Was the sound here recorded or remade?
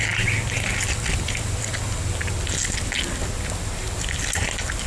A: recorded